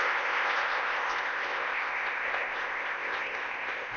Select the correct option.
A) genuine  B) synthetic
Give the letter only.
B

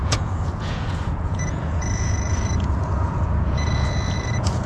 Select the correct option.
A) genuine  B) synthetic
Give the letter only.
B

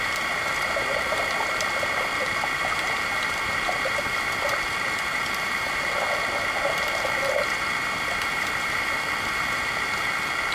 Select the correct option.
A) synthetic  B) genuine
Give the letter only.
A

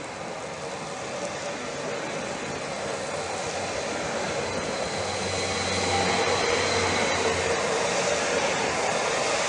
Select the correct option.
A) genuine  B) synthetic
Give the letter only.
A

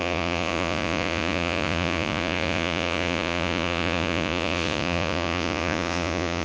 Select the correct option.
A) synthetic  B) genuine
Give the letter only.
A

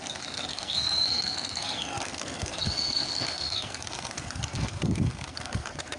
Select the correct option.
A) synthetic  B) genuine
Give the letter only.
A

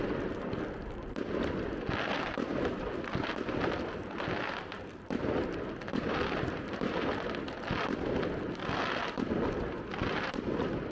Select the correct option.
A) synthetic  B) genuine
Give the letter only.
B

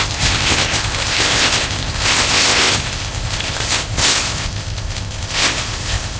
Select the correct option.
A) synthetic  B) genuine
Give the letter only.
A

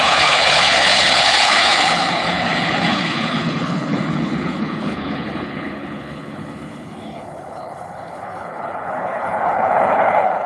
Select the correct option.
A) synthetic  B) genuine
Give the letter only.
A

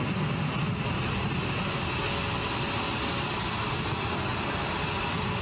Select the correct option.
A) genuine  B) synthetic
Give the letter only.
A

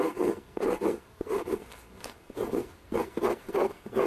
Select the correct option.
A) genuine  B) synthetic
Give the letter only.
B